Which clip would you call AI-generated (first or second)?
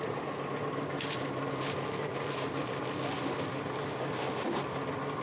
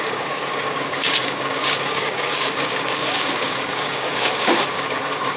second